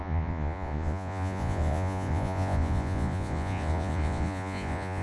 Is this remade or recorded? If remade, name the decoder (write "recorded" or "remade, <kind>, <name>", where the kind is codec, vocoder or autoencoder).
remade, vocoder, Vocos